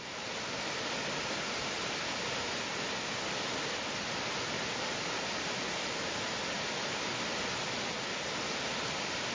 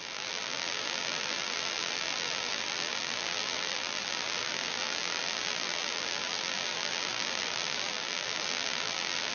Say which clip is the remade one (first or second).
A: second